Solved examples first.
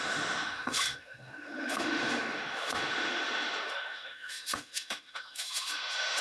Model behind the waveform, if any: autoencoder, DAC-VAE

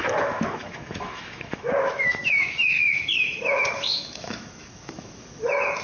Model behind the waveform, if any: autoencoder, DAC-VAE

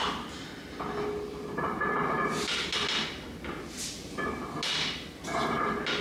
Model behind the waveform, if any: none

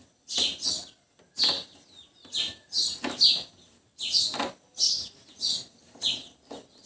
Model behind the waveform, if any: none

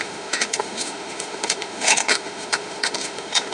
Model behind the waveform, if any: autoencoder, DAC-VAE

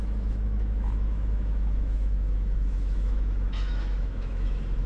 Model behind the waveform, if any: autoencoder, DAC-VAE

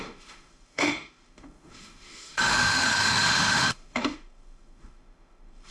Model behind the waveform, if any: autoencoder, DAC-VAE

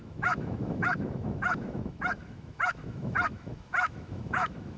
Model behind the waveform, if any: autoencoder, DAC-VAE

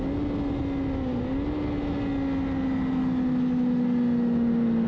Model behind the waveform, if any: none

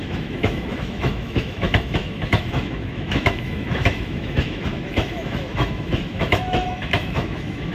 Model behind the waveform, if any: autoencoder, DAC-VAE